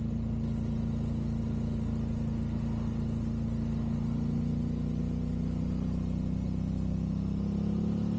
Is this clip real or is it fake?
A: real